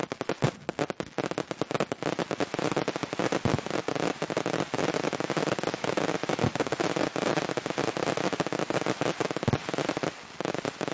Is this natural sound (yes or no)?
yes